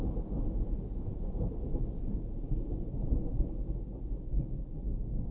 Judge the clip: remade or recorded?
recorded